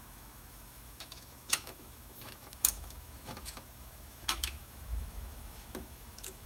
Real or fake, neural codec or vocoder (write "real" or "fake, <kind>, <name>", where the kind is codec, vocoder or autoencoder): fake, autoencoder, DAC-VAE